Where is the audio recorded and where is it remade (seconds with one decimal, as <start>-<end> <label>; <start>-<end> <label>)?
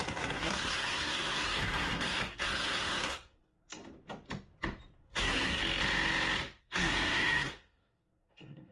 0.0-3.8 remade; 3.8-5.0 recorded; 5.0-5.6 remade; 5.6-6.6 recorded; 6.6-8.7 remade